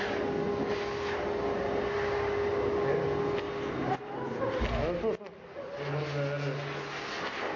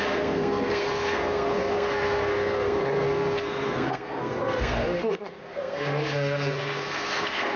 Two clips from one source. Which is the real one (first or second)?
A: first